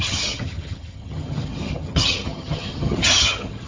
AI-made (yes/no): yes